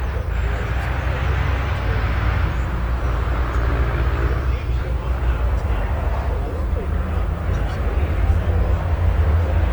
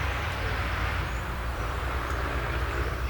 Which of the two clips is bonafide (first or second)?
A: first